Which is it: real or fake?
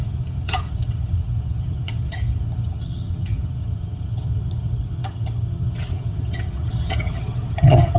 fake